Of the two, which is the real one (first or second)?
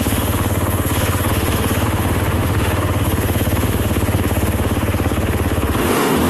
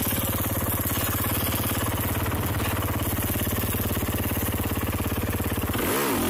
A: second